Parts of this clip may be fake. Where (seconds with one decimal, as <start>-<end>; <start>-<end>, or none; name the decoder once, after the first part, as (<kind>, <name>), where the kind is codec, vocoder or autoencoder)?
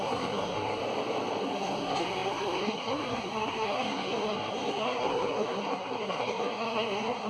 0.0-0.8 (codec, SNAC); 1.4-7.3